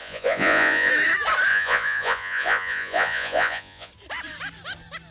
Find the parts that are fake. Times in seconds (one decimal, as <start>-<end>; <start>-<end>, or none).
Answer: 0.0-0.9; 1.5-3.9